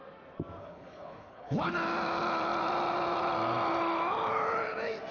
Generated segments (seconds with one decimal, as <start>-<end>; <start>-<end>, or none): 0.6-1.7